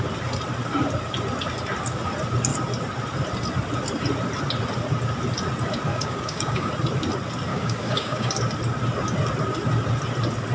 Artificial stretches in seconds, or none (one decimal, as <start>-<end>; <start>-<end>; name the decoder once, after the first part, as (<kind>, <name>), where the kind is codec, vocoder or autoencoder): 5.9-6.7 (codec, DAC); 7.5-8.3